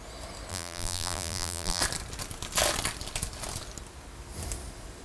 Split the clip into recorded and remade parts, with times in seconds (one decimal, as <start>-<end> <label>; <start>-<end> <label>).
0.0-0.5 recorded; 0.5-1.8 remade; 1.8-5.0 recorded